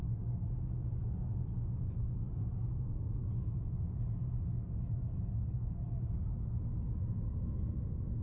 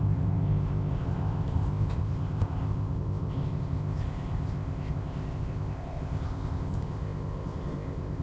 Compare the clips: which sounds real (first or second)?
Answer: first